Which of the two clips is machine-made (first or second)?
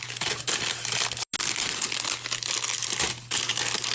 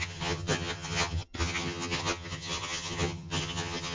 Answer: second